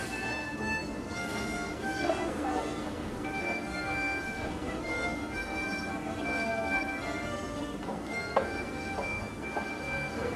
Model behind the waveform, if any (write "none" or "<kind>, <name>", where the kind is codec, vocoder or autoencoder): codec, SNAC